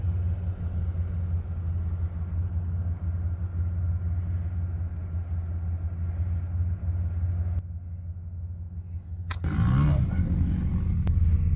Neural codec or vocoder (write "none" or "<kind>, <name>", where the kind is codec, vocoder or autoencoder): none